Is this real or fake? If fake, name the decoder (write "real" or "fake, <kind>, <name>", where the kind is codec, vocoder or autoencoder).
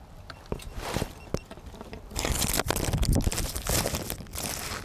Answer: real